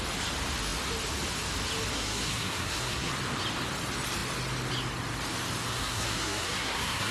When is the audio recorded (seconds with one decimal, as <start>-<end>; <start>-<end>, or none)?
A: 0.0-1.9; 3.1-5.7